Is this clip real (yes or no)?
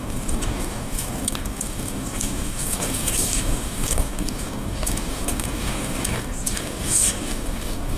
no